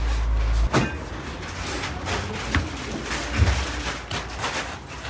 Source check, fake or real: real